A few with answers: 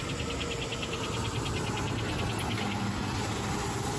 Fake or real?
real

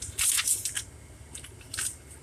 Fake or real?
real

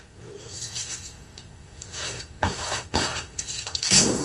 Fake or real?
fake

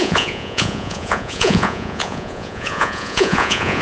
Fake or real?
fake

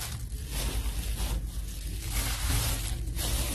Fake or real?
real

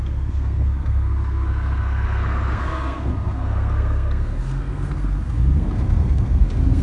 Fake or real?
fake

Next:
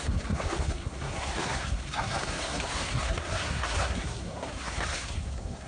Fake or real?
fake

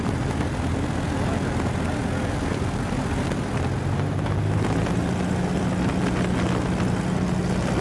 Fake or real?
real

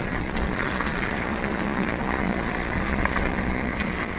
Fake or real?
fake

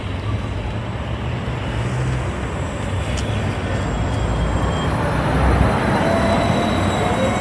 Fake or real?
real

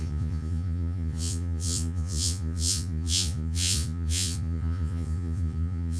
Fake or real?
fake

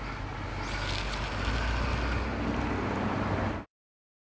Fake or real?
real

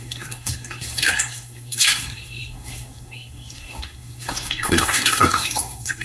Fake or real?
fake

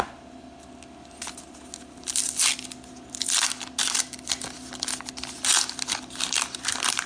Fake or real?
real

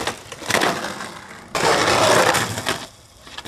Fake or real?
real